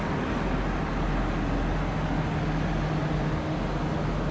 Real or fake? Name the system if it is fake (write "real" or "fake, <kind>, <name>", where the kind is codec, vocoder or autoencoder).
real